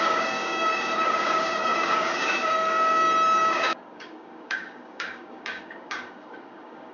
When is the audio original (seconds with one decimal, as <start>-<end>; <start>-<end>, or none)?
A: none